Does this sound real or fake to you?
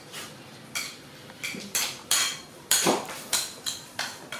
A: fake